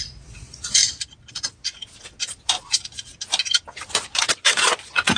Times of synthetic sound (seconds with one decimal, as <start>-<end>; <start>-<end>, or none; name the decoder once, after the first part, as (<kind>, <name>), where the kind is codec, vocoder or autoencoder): 0.0-0.8 (vocoder, Vocos); 1.3-1.8; 2.6-3.1; 4.3-5.2